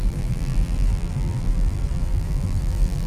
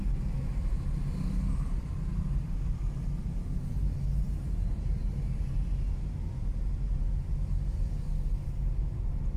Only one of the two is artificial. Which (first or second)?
first